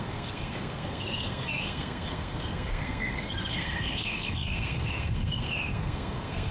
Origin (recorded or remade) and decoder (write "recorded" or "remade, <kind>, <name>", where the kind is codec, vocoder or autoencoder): remade, codec, SNAC